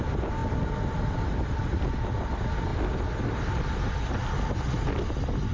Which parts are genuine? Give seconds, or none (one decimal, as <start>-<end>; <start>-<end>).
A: 0.0-5.5